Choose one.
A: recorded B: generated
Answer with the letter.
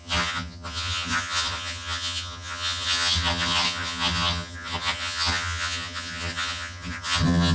B